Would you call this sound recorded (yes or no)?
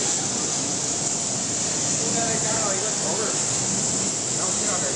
yes